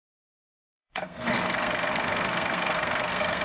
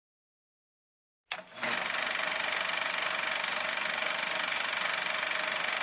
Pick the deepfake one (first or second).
first